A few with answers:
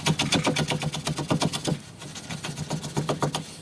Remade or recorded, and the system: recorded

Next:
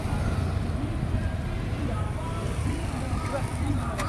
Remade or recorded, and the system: recorded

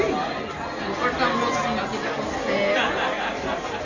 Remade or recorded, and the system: recorded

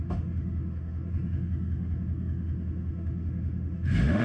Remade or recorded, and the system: remade, autoencoder, DAC-VAE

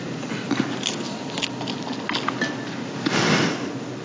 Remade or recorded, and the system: recorded